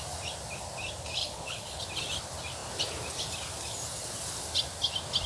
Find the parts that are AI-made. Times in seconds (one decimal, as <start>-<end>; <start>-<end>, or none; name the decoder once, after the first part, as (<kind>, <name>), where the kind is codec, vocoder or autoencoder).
1.2-1.8 (codec, HILCodec)